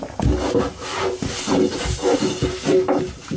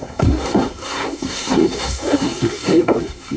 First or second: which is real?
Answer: first